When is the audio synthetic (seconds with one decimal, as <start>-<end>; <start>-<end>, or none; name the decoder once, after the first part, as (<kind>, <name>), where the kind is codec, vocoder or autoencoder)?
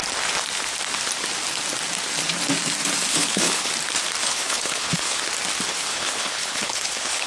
3.1-3.7 (codec, HILCodec); 4.2-5.2; 5.7-7.3